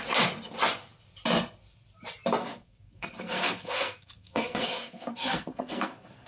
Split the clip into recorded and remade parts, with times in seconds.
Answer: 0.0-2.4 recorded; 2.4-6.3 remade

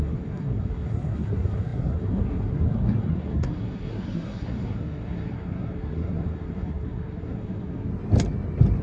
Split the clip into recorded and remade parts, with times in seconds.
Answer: 0.0-7.9 remade; 7.9-8.8 recorded

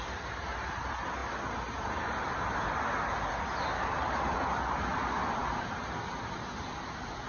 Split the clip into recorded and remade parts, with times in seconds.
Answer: 0.0-7.3 recorded

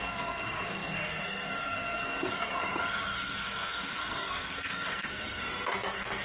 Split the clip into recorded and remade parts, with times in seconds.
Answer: 0.0-6.2 remade

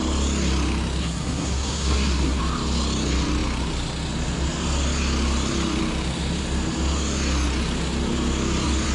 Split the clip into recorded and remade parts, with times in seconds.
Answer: 0.0-1.0 recorded; 1.0-2.4 remade; 2.4-8.9 recorded